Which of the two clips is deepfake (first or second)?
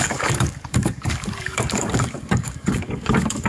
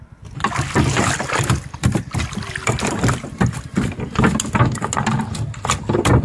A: first